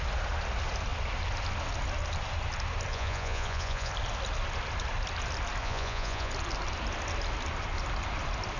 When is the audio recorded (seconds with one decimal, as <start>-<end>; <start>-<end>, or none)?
0.0-2.9; 3.9-5.6; 6.3-8.6